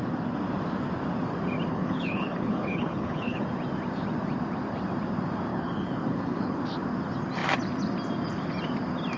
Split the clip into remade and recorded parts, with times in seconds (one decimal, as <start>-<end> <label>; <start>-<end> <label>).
0.0-1.7 recorded; 1.7-3.5 remade; 3.5-5.5 recorded; 5.5-6.6 remade; 6.6-9.2 recorded